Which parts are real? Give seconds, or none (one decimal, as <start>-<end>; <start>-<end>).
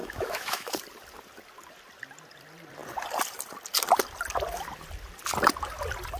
0.8-6.2